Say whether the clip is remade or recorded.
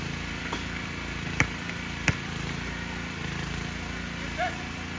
recorded